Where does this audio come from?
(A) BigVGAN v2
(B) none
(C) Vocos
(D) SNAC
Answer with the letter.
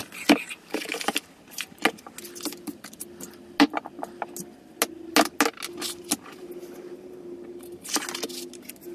B